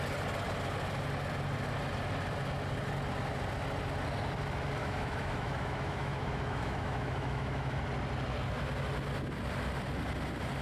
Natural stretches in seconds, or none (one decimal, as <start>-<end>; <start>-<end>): 0.0-4.8; 7.8-10.6